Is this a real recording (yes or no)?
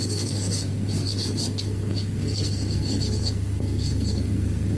no